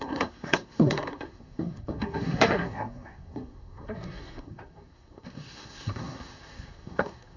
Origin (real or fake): fake